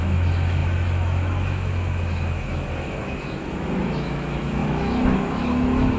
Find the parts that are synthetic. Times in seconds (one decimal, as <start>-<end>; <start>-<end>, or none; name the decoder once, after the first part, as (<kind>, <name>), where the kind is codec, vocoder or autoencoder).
0.0-6.0 (autoencoder, DAC-VAE)